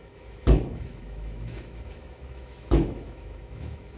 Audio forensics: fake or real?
fake